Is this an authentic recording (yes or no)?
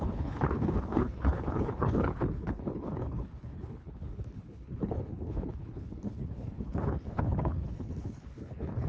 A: no